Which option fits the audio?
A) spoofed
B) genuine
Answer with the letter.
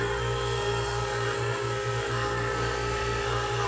A